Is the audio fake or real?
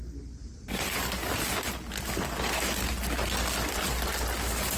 real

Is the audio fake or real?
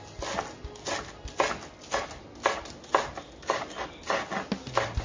real